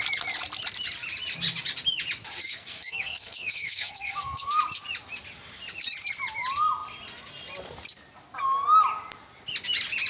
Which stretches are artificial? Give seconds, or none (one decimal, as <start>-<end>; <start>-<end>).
2.4-4.6